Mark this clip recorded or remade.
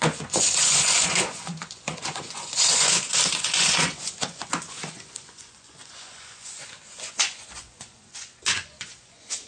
remade